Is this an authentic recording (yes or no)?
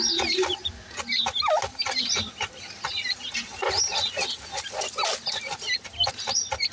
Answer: yes